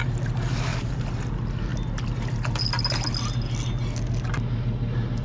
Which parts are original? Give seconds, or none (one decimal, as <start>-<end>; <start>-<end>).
0.0-0.7; 1.2-5.2